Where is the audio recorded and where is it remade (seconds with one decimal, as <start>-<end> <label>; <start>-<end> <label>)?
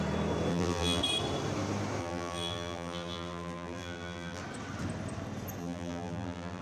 0.0-0.5 recorded; 0.5-1.0 remade; 1.0-2.0 recorded; 2.0-4.4 remade; 4.4-5.6 recorded; 5.6-6.6 remade